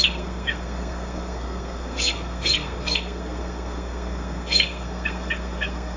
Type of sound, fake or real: fake